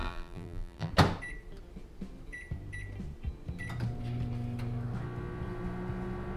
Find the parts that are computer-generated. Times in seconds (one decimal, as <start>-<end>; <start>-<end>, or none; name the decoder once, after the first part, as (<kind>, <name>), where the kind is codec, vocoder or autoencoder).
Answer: 0.0-0.9 (vocoder, BigVGAN v2)